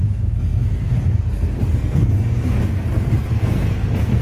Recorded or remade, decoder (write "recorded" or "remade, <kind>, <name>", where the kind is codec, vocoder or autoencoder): remade, codec, SNAC